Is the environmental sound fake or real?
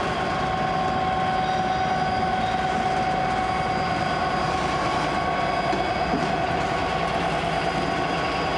real